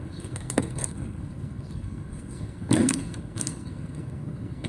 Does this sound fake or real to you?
fake